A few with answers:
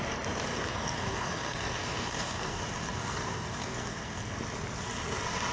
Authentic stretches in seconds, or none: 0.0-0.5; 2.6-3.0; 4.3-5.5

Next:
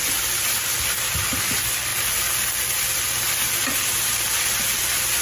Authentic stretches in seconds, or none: 0.5-5.2

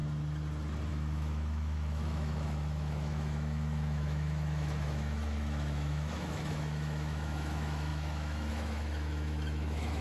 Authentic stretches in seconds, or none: 0.0-0.9

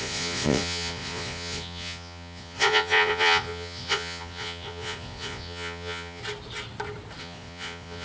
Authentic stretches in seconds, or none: 6.2-7.2

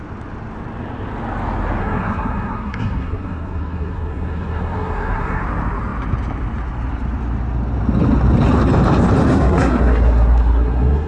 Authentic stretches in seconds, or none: 0.0-1.8; 5.4-9.3

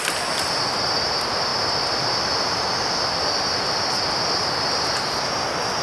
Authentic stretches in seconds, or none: 0.0-5.8

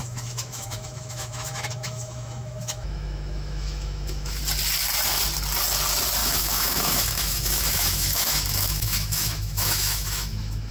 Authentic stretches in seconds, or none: 4.4-6.2

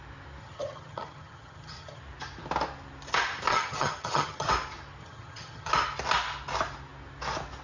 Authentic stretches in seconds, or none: 0.0-0.4; 2.0-3.5; 4.5-5.0; 5.7-7.6